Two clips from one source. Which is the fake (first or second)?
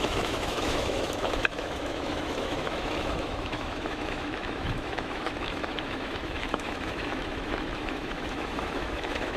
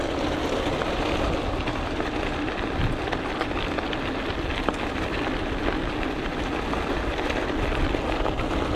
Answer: first